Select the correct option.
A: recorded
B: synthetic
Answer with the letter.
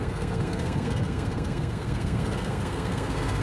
B